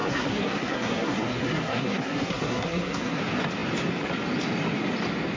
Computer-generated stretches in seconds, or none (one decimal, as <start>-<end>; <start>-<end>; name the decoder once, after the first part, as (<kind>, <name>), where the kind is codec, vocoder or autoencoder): 0.0-3.2 (codec, SNAC)